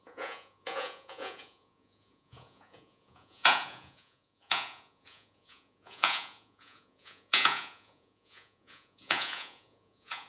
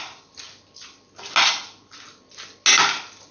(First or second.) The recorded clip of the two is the second